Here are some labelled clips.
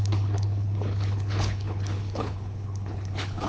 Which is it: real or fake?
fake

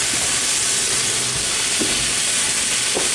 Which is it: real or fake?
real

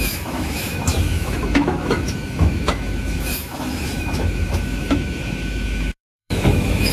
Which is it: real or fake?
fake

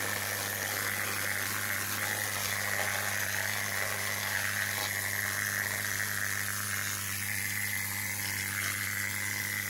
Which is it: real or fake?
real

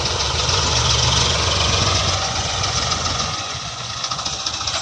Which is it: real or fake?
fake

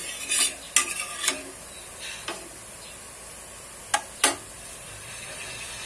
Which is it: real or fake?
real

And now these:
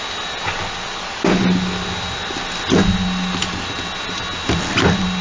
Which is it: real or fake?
real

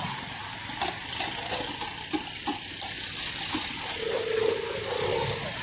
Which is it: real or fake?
real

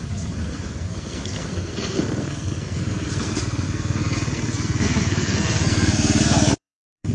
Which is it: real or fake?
fake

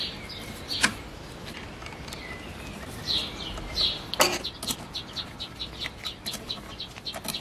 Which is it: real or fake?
real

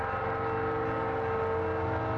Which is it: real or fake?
real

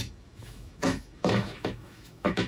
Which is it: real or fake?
fake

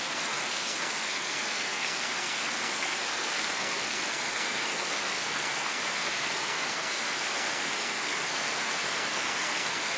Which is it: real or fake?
fake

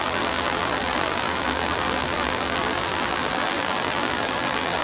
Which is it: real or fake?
fake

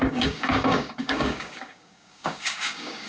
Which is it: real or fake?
fake